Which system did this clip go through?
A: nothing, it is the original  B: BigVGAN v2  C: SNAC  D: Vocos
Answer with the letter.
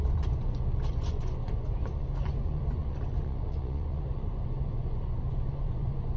D